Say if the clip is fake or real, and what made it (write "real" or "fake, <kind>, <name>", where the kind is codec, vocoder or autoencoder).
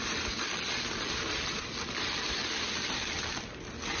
real